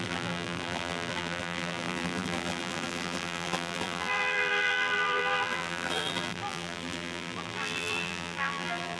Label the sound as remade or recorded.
remade